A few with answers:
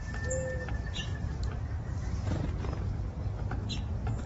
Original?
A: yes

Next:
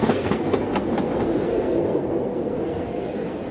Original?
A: no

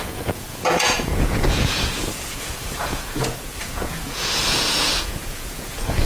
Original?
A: no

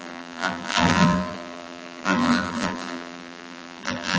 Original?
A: no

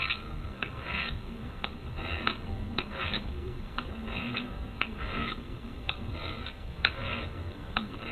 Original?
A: no